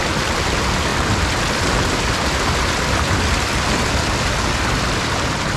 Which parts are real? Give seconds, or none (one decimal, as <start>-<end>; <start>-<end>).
0.0-5.6